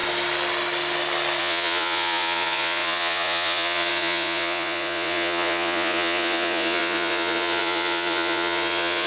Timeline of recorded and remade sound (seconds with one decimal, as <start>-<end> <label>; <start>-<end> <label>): 0.0-1.4 recorded; 1.4-9.1 remade